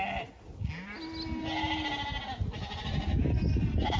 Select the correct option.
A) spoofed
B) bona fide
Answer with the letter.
B